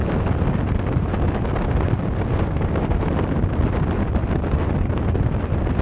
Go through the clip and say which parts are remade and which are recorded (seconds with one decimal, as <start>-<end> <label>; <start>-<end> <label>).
0.0-5.8 recorded